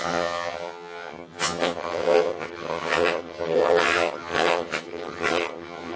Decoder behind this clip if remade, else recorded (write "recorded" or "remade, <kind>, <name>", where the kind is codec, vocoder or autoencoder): remade, vocoder, HiFi-GAN